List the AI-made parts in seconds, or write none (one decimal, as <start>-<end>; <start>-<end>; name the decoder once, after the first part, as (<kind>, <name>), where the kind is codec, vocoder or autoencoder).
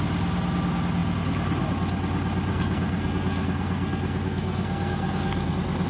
2.5-5.5 (codec, SNAC)